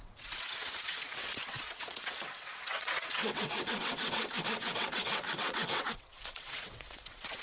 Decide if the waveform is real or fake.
fake